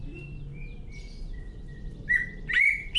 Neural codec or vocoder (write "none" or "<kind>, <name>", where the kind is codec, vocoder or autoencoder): vocoder, BigVGAN v2